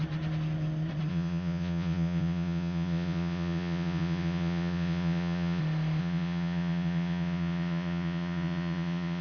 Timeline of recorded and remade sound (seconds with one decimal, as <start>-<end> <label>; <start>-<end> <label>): 0.0-1.1 recorded; 1.1-5.6 remade; 5.6-6.0 recorded; 6.0-9.2 remade